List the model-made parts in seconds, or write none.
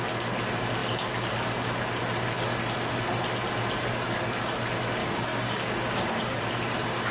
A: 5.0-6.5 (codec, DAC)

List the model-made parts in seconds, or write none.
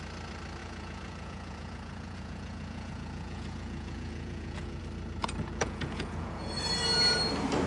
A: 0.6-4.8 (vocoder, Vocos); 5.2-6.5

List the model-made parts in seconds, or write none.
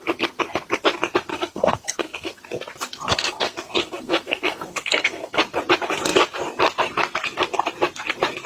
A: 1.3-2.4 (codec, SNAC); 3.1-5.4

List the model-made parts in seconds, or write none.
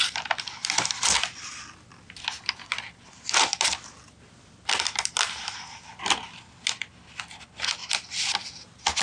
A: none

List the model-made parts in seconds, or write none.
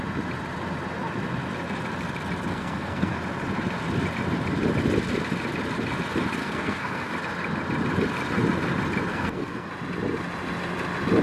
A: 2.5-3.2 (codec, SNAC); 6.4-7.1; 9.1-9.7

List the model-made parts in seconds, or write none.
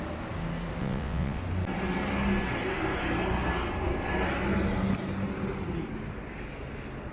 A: 0.8-1.4 (vocoder, WaveNeXt)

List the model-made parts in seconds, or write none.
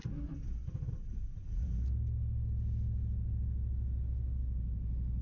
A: none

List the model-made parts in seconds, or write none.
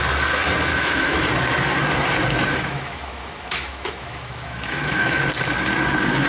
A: 0.7-1.3 (autoencoder, DAC-VAE); 2.5-5.2